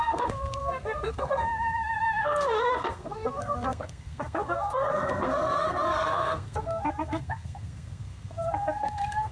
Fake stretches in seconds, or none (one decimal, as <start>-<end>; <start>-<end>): 0.0-9.3